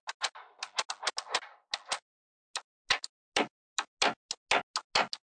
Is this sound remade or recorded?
recorded